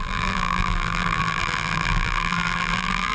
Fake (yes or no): yes